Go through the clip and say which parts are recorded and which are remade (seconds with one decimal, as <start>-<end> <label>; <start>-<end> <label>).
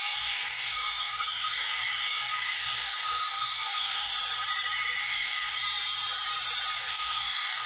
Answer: 0.0-4.1 remade; 4.1-5.0 recorded; 5.0-5.6 remade; 5.6-6.8 recorded; 6.8-7.7 remade